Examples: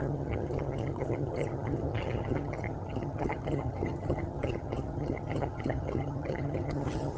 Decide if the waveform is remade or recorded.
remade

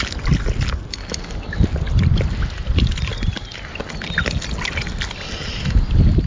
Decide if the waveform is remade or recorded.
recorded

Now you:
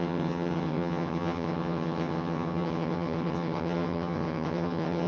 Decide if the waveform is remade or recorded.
remade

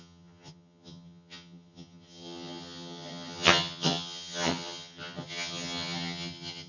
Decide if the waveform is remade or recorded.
remade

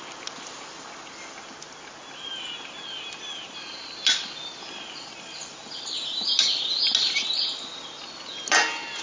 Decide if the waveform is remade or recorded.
recorded